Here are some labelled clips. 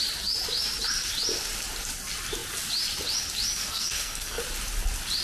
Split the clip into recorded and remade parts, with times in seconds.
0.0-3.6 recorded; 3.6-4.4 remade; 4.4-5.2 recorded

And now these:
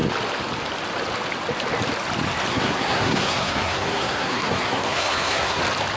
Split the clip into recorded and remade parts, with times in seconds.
0.0-2.5 recorded; 2.5-5.6 remade; 5.6-6.0 recorded

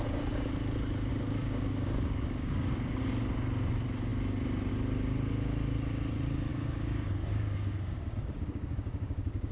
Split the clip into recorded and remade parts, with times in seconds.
0.0-1.1 recorded; 1.1-3.0 remade; 3.0-6.5 recorded; 6.5-9.5 remade

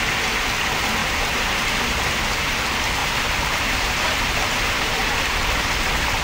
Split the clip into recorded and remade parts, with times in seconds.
0.0-1.0 recorded; 1.0-2.6 remade; 2.6-3.0 recorded; 3.0-5.1 remade; 5.1-6.2 recorded